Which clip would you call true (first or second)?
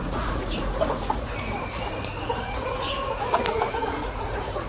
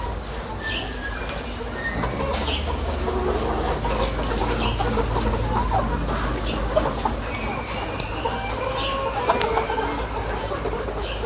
second